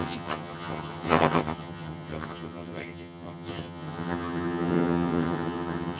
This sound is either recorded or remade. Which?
remade